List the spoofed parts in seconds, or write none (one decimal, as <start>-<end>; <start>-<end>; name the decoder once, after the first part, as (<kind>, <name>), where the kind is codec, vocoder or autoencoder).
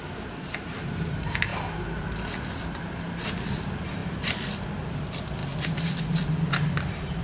0.0-7.2 (vocoder, BigVGAN v2)